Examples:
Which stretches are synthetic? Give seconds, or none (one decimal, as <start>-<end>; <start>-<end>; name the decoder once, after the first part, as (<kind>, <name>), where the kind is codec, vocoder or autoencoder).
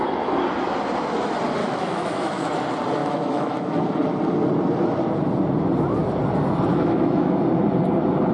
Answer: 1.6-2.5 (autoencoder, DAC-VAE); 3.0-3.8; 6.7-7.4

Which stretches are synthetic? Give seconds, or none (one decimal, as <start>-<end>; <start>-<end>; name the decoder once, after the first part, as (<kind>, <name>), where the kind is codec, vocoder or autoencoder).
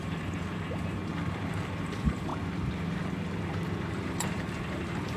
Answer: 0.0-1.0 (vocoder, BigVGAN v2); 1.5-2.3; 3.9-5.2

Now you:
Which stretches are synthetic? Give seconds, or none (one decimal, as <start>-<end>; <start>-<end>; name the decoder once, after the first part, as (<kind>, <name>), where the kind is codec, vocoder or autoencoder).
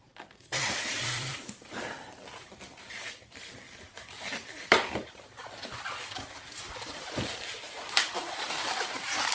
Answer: 0.0-9.3 (vocoder, BigVGAN v2)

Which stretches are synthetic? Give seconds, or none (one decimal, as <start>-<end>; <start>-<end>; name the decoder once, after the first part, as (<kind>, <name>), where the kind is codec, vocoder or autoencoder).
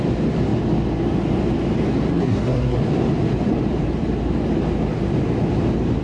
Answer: 2.1-2.8 (codec, SNAC)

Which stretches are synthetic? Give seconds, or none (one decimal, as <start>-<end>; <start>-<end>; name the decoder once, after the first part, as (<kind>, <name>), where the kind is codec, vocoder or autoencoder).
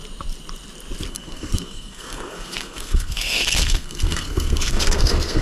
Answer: 1.1-5.4 (codec, SNAC)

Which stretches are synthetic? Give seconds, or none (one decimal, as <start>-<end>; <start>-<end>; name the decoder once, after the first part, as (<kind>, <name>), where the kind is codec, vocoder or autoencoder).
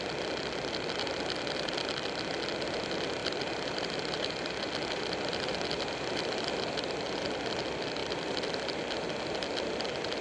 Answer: 3.2-7.3 (vocoder, BigVGAN v2); 8.0-8.8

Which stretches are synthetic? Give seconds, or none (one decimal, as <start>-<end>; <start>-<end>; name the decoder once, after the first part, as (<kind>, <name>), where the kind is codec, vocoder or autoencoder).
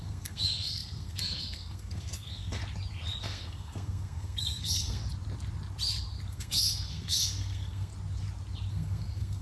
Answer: 0.0-2.6 (codec, SNAC); 3.2-5.0; 6.3-7.9; 8.7-9.4